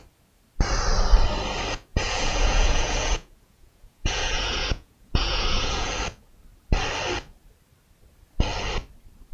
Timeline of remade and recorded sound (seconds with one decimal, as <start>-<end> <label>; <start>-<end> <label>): 0.0-1.9 recorded; 1.9-5.9 remade; 5.9-9.3 recorded